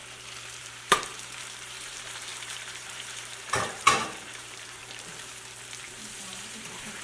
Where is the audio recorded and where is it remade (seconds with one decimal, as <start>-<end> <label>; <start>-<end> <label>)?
0.0-0.6 recorded; 0.6-4.8 remade; 4.8-6.2 recorded; 6.2-7.0 remade